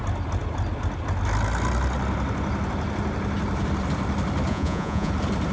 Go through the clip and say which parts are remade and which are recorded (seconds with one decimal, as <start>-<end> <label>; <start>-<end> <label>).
0.0-4.5 recorded; 4.5-5.1 remade; 5.1-5.5 recorded